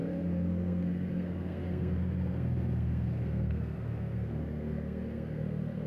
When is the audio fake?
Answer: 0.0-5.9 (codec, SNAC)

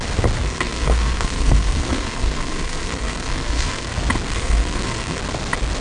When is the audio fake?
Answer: 0.4-3.9 (codec, SNAC); 4.3-5.2

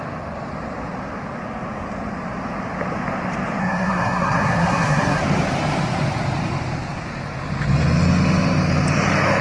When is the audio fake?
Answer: 3.6-5.2 (codec, SNAC)